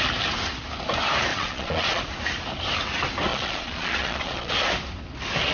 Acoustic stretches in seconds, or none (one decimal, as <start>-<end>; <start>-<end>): 0.0-1.3; 2.0-3.3; 4.5-5.5